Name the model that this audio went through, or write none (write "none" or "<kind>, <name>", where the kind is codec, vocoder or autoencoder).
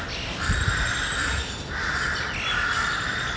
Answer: none